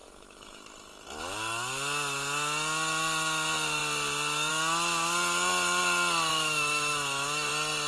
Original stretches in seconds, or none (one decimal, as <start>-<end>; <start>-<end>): 0.6-6.3; 7.5-7.9